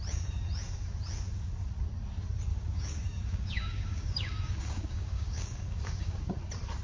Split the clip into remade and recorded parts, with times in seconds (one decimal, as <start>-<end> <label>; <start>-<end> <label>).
0.0-2.5 recorded; 2.5-6.3 remade; 6.3-6.8 recorded